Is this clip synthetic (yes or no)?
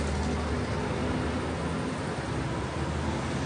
no